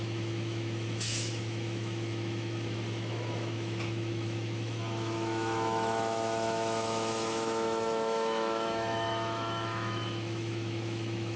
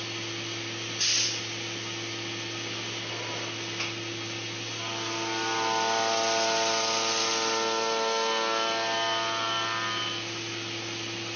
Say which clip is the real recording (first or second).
second